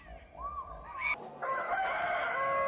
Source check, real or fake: real